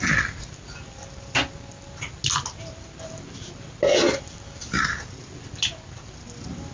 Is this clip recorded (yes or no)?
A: yes